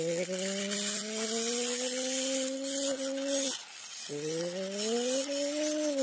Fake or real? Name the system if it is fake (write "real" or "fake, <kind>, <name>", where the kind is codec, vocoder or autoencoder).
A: real